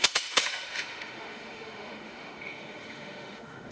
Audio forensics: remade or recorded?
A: remade